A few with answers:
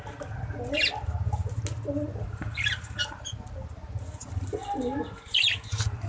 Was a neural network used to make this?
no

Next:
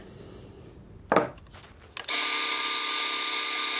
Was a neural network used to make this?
no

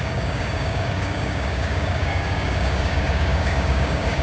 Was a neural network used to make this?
yes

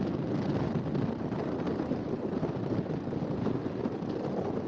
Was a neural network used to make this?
no